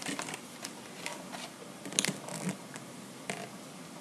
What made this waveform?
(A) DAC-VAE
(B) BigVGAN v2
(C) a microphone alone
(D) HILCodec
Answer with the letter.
C